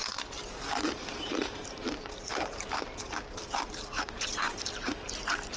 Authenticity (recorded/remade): remade